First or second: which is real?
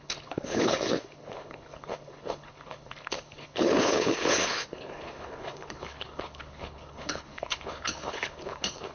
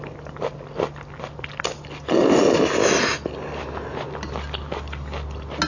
second